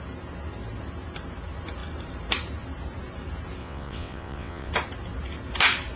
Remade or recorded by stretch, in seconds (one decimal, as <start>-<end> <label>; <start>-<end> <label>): 0.0-3.6 recorded; 3.6-4.7 remade; 4.7-6.0 recorded